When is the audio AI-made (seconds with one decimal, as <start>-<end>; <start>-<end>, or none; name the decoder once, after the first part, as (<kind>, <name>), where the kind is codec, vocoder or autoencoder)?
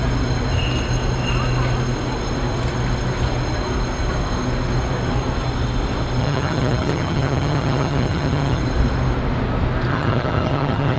6.2-8.6 (vocoder, HiFi-GAN); 9.9-11.0